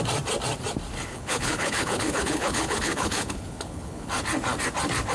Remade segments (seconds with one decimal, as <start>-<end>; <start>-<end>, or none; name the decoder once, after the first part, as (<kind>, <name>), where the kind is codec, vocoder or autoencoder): 1.1-4.1 (codec, HILCodec)